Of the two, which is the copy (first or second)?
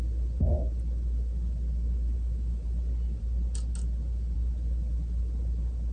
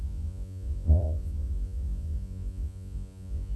second